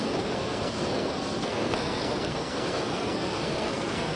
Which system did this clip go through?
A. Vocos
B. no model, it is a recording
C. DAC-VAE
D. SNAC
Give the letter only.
D